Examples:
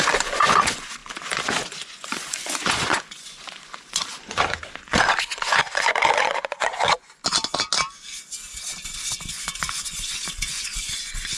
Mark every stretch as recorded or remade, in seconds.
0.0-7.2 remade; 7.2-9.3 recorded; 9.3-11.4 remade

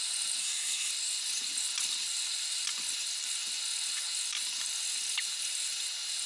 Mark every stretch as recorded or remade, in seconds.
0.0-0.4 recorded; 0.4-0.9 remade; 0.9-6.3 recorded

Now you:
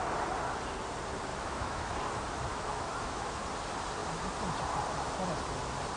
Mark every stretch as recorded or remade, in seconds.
0.0-1.3 recorded; 1.3-1.9 remade; 1.9-2.5 recorded; 2.5-3.4 remade; 3.4-6.0 recorded

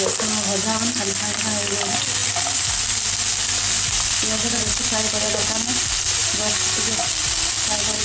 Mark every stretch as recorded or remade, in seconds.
0.0-8.0 recorded

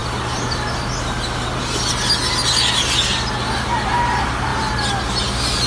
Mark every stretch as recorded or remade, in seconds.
0.0-5.7 recorded

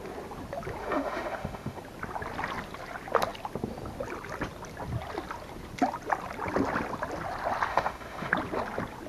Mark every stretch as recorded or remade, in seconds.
0.0-0.8 recorded; 0.8-1.8 remade; 1.8-7.7 recorded; 7.7-8.3 remade; 8.3-9.1 recorded